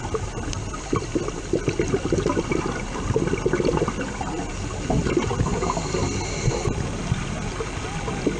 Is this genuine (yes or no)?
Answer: yes